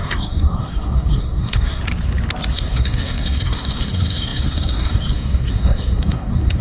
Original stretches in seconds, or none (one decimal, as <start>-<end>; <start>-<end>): 1.8-2.5